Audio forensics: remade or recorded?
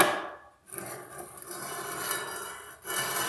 recorded